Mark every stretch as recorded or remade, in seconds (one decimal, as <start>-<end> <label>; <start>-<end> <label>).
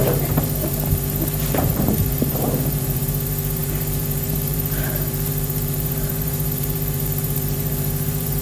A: 0.0-8.4 remade